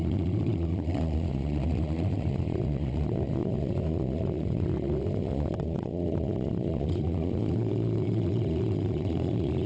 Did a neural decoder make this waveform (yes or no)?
yes